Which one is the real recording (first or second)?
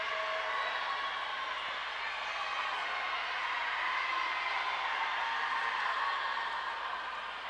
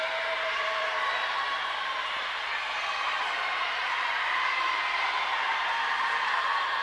first